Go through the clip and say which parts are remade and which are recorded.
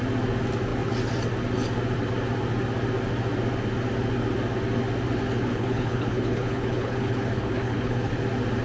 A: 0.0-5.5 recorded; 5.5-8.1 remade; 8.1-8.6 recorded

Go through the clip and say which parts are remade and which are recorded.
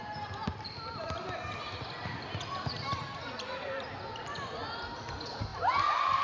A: 0.0-6.2 recorded